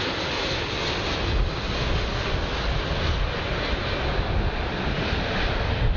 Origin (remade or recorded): recorded